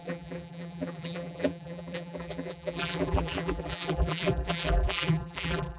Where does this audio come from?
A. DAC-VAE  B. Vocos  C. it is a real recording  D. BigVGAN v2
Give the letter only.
D